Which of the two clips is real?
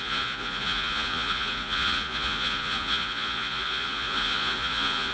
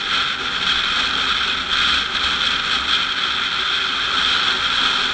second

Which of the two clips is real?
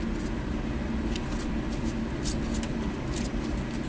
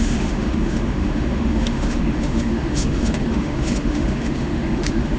first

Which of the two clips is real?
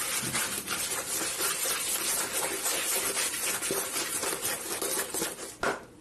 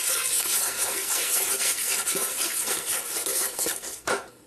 first